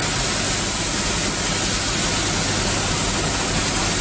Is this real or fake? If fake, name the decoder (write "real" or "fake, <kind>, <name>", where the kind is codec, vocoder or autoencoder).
real